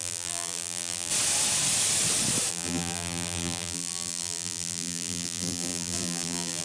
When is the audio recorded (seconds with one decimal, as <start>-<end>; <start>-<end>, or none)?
1.1-2.5